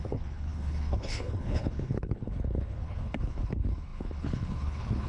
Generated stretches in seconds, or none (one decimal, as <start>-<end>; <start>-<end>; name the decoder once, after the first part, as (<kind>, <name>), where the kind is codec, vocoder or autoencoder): 0.0-5.1 (codec, HILCodec)